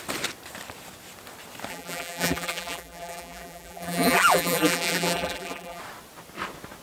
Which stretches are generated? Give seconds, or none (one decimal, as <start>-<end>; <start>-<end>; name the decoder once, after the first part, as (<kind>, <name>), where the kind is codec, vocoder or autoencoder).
1.7-5.8 (vocoder, BigVGAN v2)